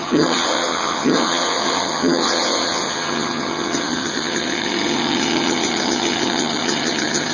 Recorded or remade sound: remade